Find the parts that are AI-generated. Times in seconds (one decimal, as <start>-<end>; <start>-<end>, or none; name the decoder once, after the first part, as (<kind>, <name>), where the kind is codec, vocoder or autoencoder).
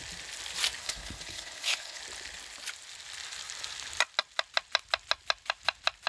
0.8-2.0 (codec, HILCodec)